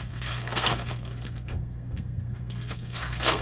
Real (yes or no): no